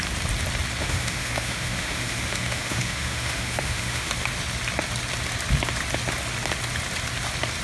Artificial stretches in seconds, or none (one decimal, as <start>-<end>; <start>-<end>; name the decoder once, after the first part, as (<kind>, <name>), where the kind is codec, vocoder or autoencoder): 0.8-4.1 (autoencoder, DAC-VAE)